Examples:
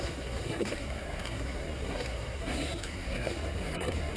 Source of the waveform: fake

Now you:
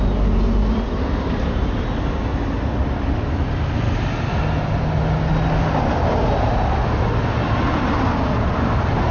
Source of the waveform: real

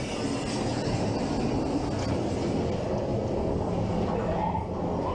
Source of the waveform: real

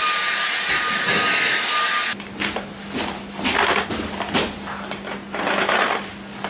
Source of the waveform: real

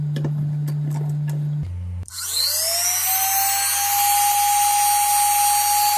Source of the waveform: real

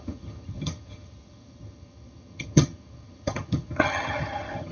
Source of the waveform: fake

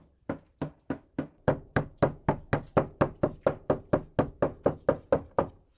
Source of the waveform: real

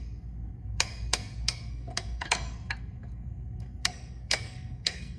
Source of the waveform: fake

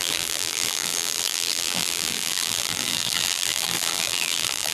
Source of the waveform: fake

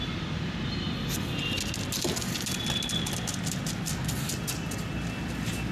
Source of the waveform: real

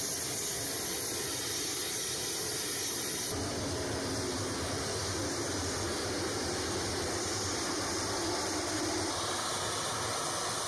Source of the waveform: real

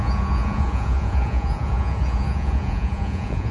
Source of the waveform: fake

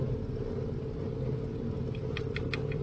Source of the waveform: real